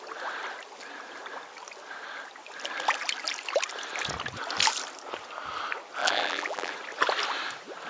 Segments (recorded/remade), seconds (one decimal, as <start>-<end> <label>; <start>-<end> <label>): 0.0-6.0 recorded; 6.0-6.7 remade; 6.7-7.9 recorded